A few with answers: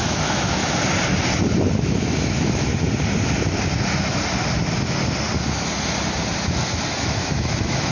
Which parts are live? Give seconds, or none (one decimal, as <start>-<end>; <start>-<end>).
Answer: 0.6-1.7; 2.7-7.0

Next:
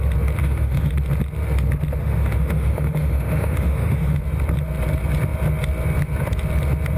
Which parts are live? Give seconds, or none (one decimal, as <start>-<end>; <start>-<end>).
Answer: 0.0-0.4; 0.9-2.0; 4.2-7.0

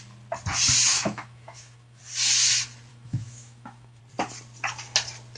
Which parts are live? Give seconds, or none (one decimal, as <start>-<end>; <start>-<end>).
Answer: 0.0-0.9; 2.0-2.9; 4.0-5.4

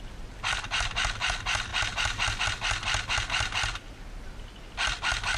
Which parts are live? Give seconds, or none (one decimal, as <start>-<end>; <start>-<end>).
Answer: 0.0-5.4

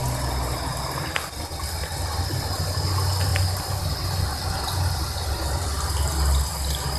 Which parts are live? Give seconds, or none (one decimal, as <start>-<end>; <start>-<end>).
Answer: 0.0-7.0